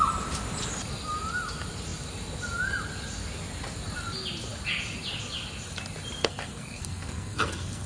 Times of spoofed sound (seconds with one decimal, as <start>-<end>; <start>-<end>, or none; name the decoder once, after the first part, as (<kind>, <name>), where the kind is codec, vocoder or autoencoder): 6.2-7.9 (codec, SNAC)